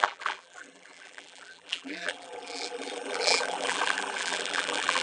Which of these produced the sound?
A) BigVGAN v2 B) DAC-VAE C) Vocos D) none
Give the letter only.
A